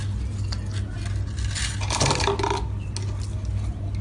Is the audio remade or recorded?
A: recorded